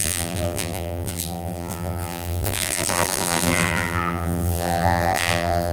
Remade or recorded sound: remade